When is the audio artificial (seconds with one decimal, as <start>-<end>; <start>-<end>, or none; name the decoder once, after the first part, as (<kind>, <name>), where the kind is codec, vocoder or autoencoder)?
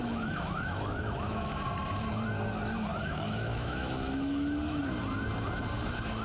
0.0-1.5 (autoencoder, DAC-VAE); 2.9-4.8